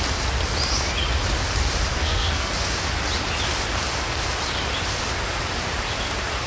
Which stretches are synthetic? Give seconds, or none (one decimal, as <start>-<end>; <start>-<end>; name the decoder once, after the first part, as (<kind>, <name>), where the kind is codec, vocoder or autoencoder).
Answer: 1.9-2.5 (codec, SNAC)